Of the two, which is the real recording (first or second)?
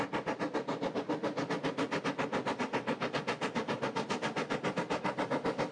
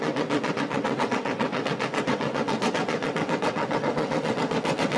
first